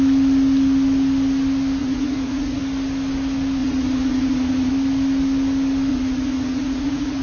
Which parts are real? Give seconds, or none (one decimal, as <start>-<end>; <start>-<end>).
0.0-1.8; 2.6-3.6; 4.7-5.9